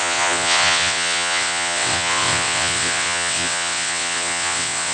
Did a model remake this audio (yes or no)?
yes